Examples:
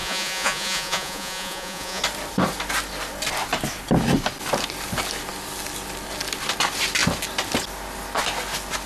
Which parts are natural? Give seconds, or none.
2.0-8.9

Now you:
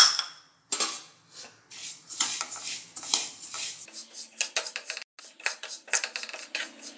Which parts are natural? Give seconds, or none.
0.0-1.8; 2.4-7.0

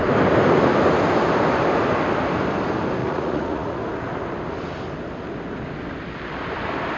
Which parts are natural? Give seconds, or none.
0.0-3.0; 3.8-7.0

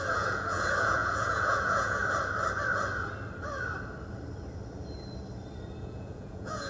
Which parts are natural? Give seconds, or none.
2.0-5.8